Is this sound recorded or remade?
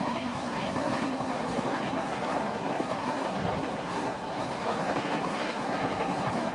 remade